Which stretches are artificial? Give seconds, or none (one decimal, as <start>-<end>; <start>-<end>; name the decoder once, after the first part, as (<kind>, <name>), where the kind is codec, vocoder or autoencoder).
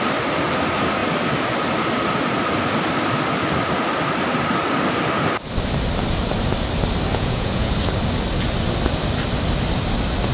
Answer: 7.1-7.7 (vocoder, Vocos)